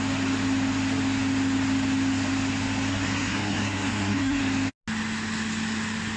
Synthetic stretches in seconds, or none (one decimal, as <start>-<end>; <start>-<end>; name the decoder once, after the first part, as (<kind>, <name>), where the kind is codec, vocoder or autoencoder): 2.9-4.4 (codec, SNAC)